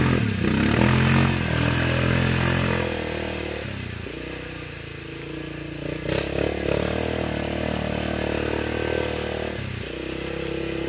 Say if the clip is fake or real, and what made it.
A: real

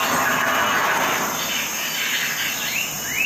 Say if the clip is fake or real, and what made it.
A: real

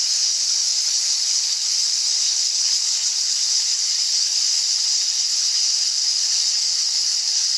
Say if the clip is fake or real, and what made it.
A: fake, codec, HILCodec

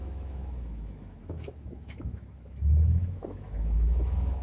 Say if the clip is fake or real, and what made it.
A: fake, autoencoder, DAC-VAE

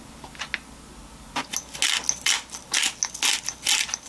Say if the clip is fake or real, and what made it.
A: real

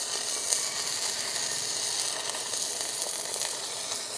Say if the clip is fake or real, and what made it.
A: real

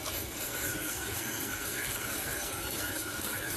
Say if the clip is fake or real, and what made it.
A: fake, codec, SNAC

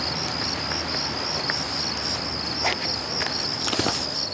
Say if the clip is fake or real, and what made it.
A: real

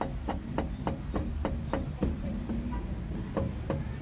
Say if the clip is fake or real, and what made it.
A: real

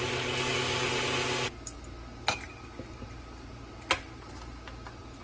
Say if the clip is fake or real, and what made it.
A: real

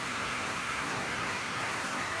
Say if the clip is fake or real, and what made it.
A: fake, codec, SNAC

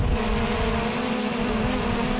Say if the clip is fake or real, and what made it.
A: real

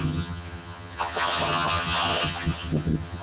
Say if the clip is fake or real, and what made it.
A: fake, vocoder, HiFi-GAN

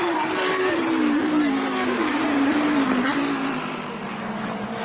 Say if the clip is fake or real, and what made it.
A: fake, vocoder, BigVGAN v2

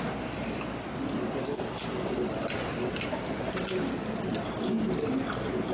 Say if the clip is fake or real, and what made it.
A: real